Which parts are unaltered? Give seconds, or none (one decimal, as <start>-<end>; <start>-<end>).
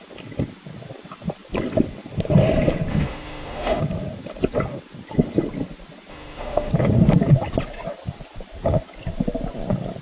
0.0-2.9; 3.8-6.1; 6.7-10.0